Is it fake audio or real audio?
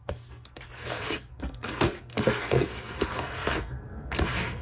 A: fake